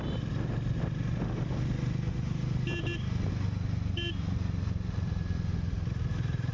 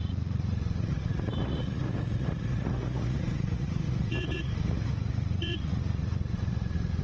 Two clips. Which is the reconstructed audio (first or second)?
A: second